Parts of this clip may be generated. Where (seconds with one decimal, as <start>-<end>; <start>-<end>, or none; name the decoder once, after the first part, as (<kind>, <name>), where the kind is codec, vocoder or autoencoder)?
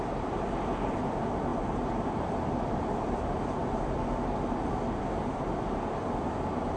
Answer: none